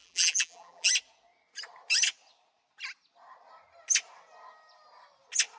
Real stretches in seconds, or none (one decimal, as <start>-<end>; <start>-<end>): 0.9-5.6

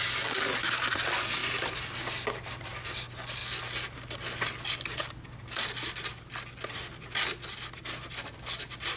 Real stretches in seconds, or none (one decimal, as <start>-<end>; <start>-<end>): 0.0-9.0

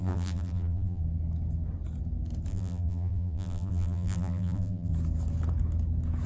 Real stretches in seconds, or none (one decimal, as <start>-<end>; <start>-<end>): 1.0-2.5; 4.9-6.3

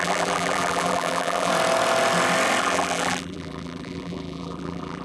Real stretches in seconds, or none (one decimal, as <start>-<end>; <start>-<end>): 1.5-2.6

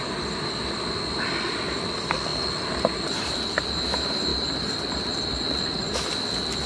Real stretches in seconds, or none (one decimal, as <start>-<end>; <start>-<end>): 0.0-2.3; 3.7-4.3; 5.1-6.7

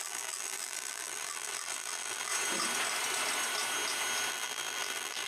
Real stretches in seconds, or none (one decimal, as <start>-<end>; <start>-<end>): 2.3-4.3

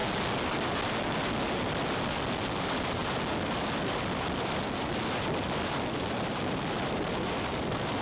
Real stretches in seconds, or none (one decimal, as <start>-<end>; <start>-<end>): 0.0-2.6; 3.0-4.0